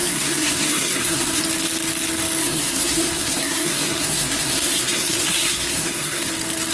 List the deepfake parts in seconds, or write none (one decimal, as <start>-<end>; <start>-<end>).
0.0-1.4; 2.4-6.3